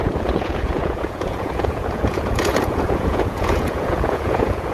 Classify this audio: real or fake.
fake